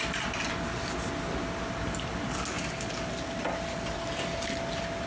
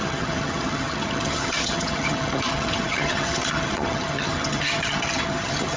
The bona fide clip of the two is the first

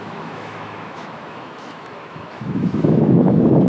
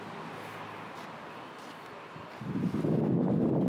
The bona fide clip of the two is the second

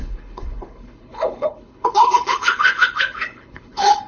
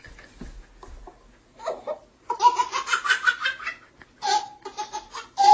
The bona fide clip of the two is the second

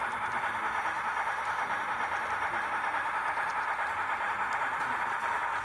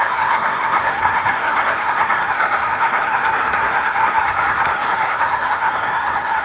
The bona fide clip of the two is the first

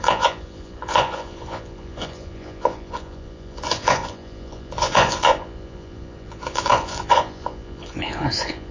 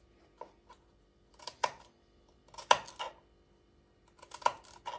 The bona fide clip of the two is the second